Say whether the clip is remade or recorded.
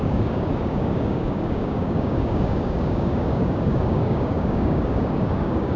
remade